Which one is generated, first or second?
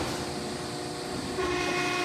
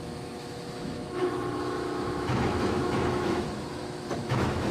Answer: second